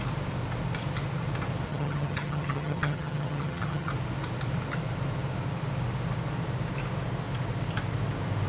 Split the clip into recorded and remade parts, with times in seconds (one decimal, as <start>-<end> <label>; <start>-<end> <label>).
0.0-1.7 recorded; 1.7-3.9 remade; 3.9-8.5 recorded